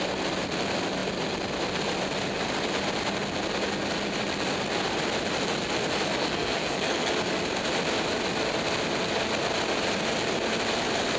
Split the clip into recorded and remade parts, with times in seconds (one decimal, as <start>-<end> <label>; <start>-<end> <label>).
0.0-6.2 recorded; 6.2-7.1 remade; 7.1-11.2 recorded